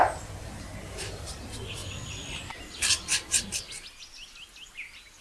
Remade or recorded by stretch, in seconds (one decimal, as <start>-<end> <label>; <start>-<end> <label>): 0.0-5.2 recorded